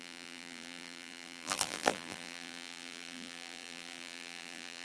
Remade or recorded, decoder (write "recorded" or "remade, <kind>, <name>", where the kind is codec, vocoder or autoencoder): remade, vocoder, BigVGAN v2